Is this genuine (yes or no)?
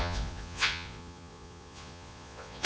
no